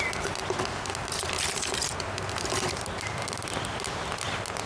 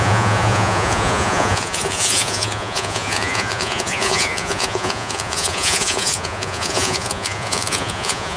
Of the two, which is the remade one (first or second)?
second